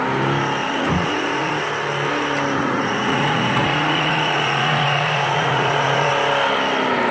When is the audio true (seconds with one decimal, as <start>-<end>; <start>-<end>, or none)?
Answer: 0.0-0.6; 1.5-2.6; 6.1-7.1